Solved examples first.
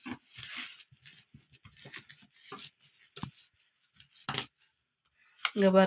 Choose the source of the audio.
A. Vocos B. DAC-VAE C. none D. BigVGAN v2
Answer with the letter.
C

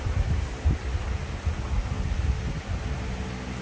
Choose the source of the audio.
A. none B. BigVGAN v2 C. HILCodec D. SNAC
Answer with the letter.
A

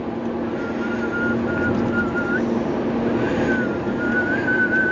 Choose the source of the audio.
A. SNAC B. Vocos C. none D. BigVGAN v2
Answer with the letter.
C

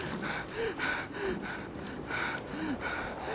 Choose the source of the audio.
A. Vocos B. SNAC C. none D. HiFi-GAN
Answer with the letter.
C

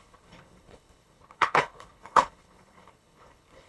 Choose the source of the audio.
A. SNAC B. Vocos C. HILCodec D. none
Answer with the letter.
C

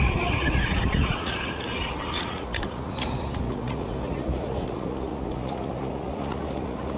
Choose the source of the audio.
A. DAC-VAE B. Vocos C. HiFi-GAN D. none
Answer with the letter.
B